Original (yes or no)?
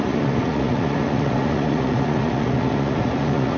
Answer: no